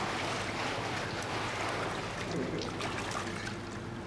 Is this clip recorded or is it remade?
recorded